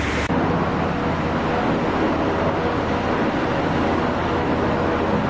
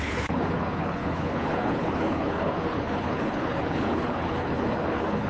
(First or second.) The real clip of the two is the first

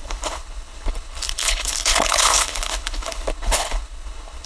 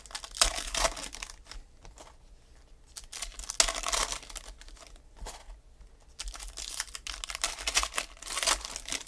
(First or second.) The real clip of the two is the second